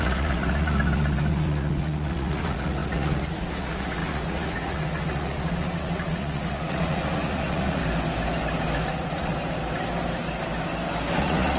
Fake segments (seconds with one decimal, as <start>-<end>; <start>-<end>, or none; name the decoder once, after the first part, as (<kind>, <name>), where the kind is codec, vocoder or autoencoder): 0.0-7.8 (vocoder, Vocos); 8.9-9.3; 11.2-11.6